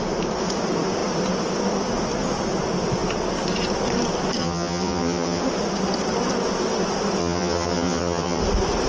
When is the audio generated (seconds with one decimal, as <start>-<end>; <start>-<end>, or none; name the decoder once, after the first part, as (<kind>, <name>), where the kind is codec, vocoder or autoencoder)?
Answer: 4.4-5.4 (vocoder, HiFi-GAN); 7.2-8.4